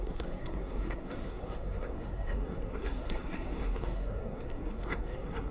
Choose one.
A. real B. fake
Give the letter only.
B